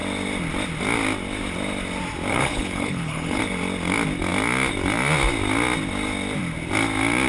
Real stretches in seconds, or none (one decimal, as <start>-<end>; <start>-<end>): 0.0-2.3; 3.4-7.3